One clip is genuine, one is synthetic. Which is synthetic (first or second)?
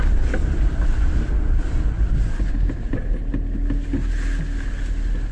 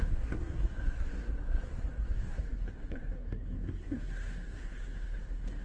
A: second